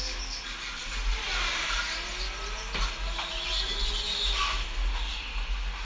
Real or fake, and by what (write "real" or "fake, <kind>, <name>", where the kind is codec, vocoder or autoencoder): real